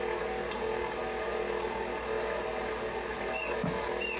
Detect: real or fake real